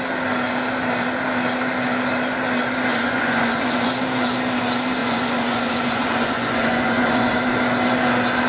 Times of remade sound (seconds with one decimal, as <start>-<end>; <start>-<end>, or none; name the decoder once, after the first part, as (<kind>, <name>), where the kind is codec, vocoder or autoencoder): 2.9-3.9 (vocoder, Vocos); 5.0-7.4